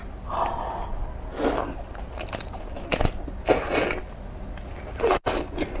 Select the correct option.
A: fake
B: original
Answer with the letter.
B